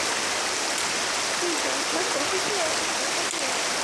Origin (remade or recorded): recorded